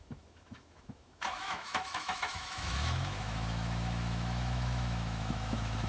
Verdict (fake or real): fake